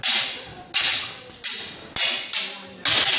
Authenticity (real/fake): real